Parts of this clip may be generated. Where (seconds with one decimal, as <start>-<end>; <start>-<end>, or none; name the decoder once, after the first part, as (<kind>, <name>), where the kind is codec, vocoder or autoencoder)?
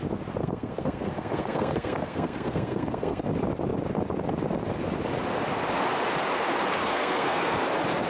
0.4-3.2 (codec, SNAC); 6.8-7.6